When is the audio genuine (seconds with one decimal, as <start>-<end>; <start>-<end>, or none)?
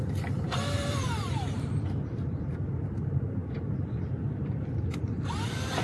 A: none